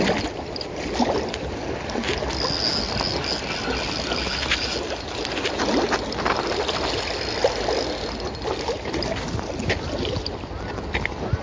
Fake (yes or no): no